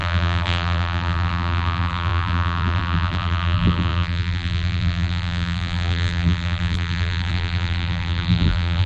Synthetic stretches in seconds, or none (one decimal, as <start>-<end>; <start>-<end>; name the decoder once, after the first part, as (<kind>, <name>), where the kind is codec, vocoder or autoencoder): 0.0-8.9 (vocoder, BigVGAN v2)